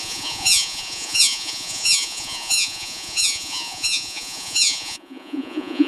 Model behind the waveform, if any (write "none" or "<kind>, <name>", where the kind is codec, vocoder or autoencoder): vocoder, Vocos